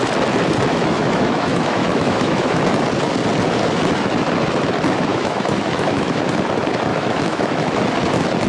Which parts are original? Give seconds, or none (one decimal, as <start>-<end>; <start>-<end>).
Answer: 0.0-0.7; 2.6-5.1; 6.2-6.9; 7.8-8.5